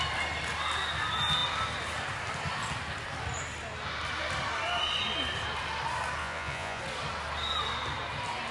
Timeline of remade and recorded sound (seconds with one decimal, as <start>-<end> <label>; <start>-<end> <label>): 0.0-6.2 recorded; 6.2-6.8 remade; 6.8-8.5 recorded